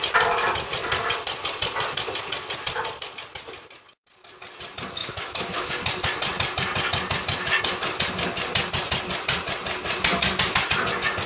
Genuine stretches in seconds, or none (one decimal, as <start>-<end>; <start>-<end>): 0.0-5.0; 5.7-11.3